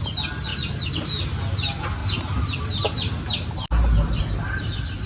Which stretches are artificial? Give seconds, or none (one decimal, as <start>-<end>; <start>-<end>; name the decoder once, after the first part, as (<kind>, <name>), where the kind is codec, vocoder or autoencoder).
0.5-1.4 (vocoder, BigVGAN v2)